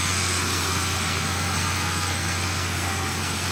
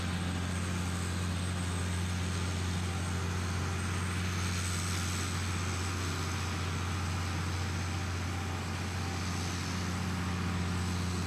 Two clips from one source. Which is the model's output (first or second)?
first